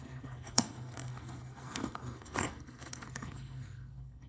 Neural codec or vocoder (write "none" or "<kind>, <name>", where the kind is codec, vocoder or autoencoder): codec, SNAC